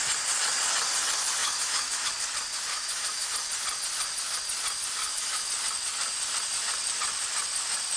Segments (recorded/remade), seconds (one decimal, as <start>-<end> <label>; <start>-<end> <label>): 0.0-1.4 recorded; 1.4-2.1 remade; 2.1-2.7 recorded; 2.7-3.3 remade; 3.3-5.0 recorded; 5.0-5.5 remade; 5.5-8.0 recorded